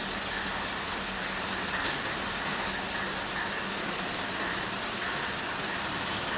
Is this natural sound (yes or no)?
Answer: yes